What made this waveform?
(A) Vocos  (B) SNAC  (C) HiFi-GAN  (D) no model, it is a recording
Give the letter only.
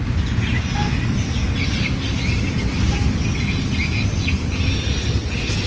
D